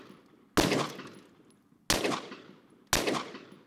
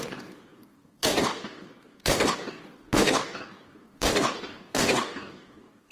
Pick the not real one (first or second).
second